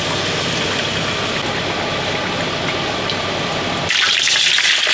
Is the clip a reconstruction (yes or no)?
no